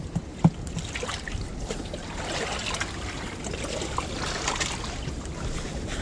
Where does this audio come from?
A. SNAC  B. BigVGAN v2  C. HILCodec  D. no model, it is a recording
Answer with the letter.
D